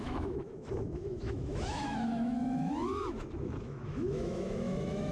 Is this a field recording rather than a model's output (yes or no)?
no